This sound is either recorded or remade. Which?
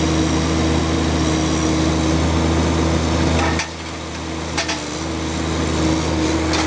recorded